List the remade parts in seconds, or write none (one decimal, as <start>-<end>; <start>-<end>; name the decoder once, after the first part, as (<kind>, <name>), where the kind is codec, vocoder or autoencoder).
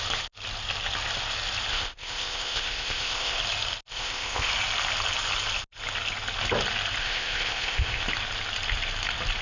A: 1.7-3.4 (codec, ZipCodec); 3.9-4.5; 7.0-8.0